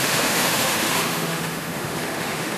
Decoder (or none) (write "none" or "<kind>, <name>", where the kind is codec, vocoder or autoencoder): autoencoder, DAC-VAE